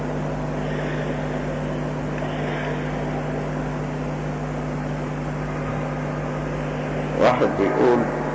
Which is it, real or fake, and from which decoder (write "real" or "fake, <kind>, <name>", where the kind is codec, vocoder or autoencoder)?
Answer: real